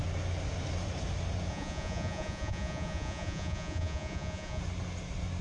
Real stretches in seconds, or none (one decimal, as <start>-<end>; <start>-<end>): 0.0-1.5; 4.6-5.4